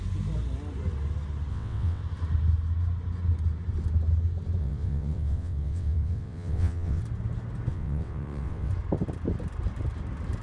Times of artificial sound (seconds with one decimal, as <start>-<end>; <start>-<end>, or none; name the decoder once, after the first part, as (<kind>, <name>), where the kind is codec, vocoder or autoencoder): 1.5-2.0 (vocoder, WaveNeXt); 4.6-7.0; 7.7-8.7